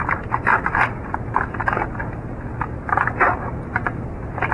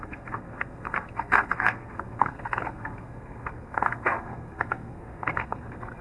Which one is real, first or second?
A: first